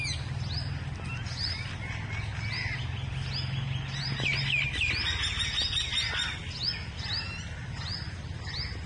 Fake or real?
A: real